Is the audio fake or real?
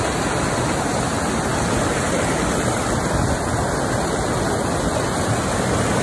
real